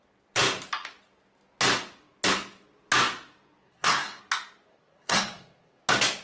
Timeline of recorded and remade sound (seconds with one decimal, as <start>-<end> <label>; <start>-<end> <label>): 0.0-3.6 recorded; 3.6-4.2 remade; 4.2-4.7 recorded; 4.7-5.8 remade; 5.8-6.2 recorded